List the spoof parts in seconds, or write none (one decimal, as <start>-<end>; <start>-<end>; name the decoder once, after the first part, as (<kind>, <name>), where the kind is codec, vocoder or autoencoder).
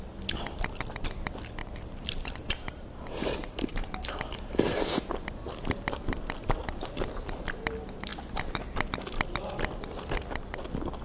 1.6-5.1 (vocoder, BigVGAN v2); 6.6-7.4